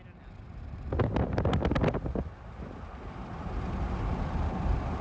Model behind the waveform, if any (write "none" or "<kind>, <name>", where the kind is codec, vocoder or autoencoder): none